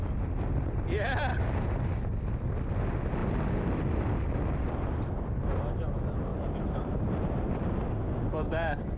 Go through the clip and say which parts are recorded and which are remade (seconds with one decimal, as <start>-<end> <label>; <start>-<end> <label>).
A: 0.0-6.3 recorded; 6.3-7.7 remade; 7.7-9.0 recorded